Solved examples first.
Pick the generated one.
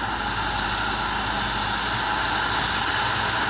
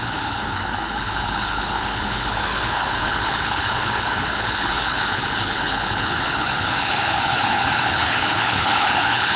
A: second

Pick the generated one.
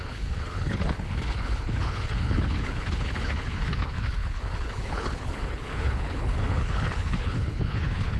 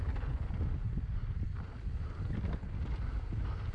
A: first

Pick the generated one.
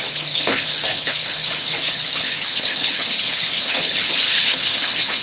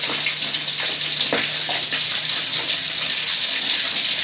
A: first